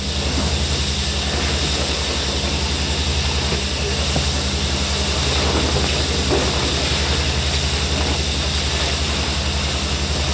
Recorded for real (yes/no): yes